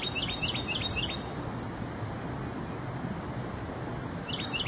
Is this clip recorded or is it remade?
recorded